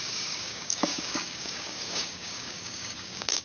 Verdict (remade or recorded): remade